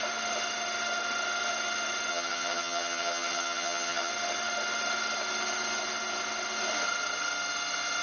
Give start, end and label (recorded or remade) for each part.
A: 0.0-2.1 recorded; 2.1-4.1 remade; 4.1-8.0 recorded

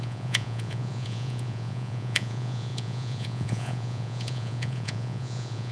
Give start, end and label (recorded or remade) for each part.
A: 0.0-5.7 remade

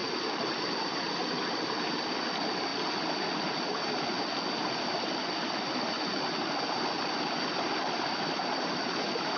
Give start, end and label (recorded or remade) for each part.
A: 0.0-9.4 recorded